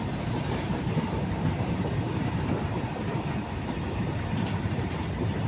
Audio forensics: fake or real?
fake